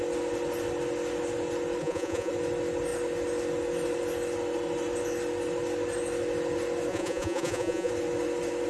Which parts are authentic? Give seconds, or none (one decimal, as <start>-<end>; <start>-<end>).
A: 0.0-1.8; 2.3-6.9; 7.9-8.7